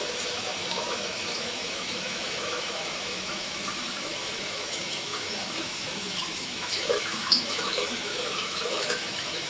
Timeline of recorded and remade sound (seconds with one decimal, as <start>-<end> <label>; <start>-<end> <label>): 0.0-9.5 remade

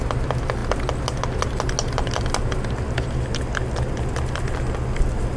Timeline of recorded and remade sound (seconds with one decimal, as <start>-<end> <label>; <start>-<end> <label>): 0.0-5.4 recorded

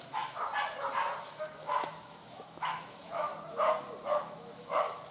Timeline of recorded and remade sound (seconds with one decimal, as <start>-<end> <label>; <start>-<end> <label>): 0.0-0.5 remade; 0.5-1.2 recorded; 1.2-3.3 remade; 3.3-4.1 recorded; 4.1-5.1 remade

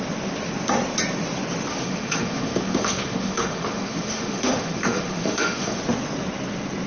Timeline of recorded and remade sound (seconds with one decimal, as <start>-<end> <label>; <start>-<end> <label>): 0.0-1.7 recorded; 1.7-5.8 remade; 5.8-6.9 recorded

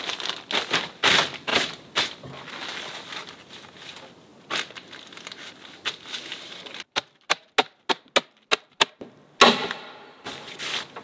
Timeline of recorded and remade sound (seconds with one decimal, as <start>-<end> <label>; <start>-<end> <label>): 0.0-11.0 recorded

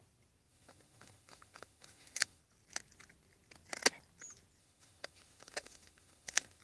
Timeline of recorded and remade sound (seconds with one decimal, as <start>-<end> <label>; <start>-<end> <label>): 0.0-0.5 recorded; 0.5-2.4 remade; 2.4-4.6 recorded; 4.6-6.6 remade

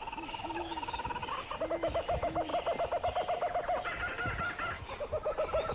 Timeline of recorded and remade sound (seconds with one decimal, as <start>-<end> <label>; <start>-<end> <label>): 0.0-1.2 remade; 1.2-1.7 recorded; 1.7-2.5 remade; 2.5-5.7 recorded